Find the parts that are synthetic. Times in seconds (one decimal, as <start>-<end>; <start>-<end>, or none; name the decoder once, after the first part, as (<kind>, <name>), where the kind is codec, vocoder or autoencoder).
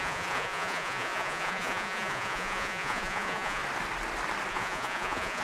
0.0-3.6 (vocoder, Vocos); 4.5-5.4